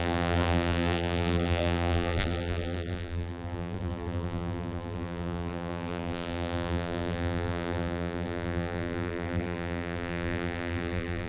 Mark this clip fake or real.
fake